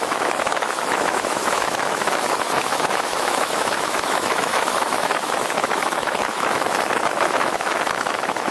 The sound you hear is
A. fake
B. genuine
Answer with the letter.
A